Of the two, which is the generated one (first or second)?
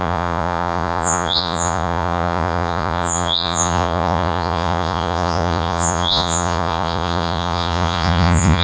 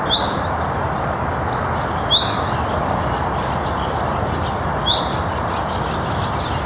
first